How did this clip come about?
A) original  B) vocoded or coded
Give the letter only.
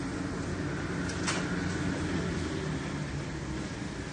A